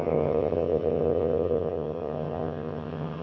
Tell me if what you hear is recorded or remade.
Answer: remade